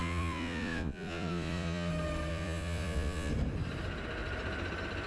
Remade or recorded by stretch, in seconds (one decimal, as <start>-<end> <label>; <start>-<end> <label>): 0.0-1.9 remade; 1.9-2.3 recorded; 2.3-3.3 remade; 3.3-5.1 recorded